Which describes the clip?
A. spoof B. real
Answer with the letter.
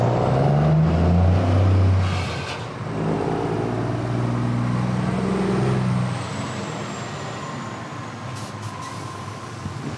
B